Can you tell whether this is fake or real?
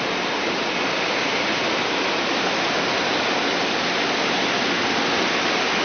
real